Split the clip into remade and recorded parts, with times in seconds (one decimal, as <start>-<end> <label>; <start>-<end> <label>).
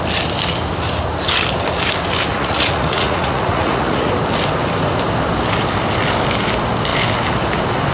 0.0-2.3 recorded; 2.3-4.1 remade; 4.1-7.9 recorded